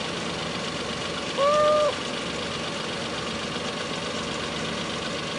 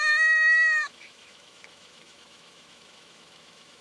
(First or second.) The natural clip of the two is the first